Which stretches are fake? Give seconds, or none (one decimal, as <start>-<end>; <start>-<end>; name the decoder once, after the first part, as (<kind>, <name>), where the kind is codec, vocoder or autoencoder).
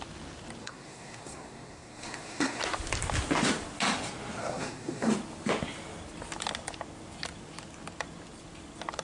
0.6-2.6 (codec, SNAC); 4.4-5.1